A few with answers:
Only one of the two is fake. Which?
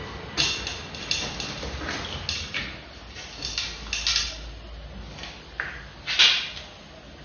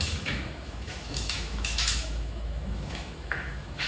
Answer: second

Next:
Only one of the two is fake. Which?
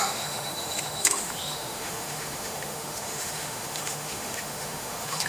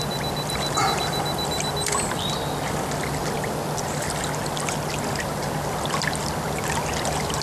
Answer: first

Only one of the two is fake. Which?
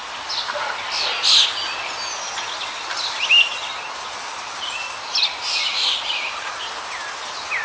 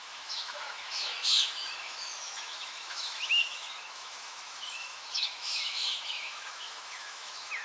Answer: second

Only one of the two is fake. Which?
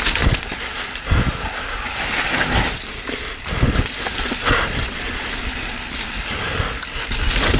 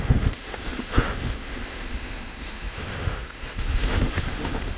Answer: second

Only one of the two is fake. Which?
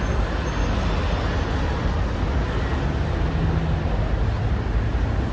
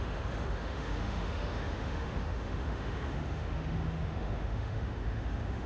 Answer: second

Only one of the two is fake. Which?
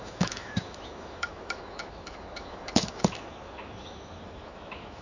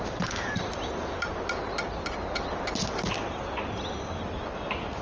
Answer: first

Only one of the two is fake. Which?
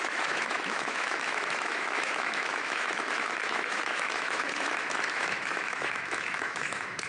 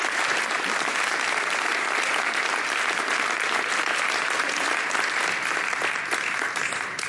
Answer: first